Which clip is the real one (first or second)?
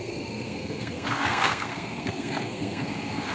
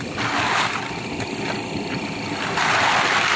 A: second